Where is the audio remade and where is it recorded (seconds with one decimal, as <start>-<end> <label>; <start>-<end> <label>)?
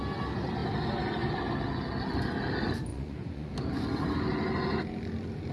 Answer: 0.0-2.9 recorded; 2.9-3.5 remade; 3.5-5.5 recorded